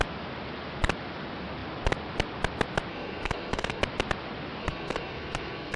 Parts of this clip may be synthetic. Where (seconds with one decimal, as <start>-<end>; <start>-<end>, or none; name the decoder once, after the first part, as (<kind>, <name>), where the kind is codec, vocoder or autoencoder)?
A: 2.9-3.8 (codec, SNAC); 4.6-5.8